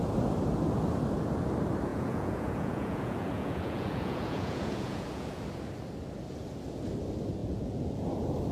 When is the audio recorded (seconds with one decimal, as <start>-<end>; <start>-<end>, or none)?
0.0-1.9; 5.4-7.4; 8.0-8.5